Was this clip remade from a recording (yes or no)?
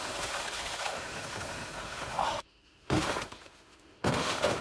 yes